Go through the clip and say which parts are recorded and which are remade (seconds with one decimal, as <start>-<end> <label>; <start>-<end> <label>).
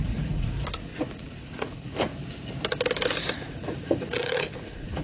0.0-2.1 remade; 2.1-3.3 recorded; 3.3-5.0 remade